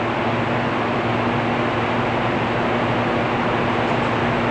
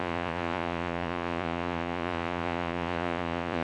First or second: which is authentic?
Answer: first